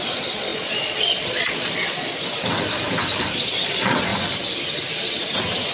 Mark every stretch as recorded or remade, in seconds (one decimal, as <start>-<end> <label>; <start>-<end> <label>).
0.0-2.0 remade; 2.0-3.3 recorded; 3.3-4.1 remade; 4.1-5.7 recorded